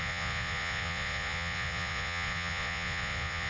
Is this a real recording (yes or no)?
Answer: no